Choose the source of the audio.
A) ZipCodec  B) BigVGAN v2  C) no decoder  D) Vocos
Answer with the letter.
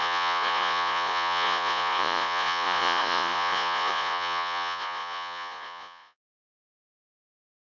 D